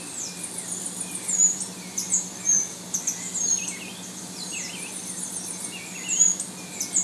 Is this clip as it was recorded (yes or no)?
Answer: yes